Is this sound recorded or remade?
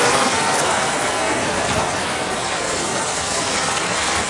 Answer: remade